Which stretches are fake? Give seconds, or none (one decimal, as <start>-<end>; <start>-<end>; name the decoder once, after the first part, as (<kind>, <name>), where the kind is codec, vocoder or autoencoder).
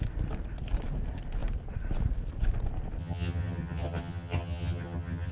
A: 3.0-5.3 (vocoder, HiFi-GAN)